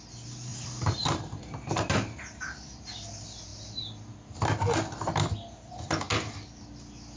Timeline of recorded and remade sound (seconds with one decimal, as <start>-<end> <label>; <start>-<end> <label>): 0.0-0.5 recorded; 0.5-1.4 remade; 1.4-7.2 recorded